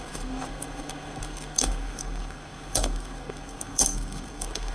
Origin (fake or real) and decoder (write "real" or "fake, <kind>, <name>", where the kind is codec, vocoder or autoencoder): fake, codec, SNAC